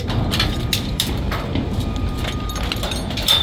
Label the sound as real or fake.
real